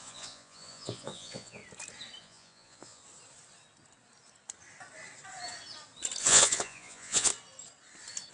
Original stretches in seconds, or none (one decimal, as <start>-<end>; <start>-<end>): 1.6-2.2; 3.0-6.2; 7.3-8.3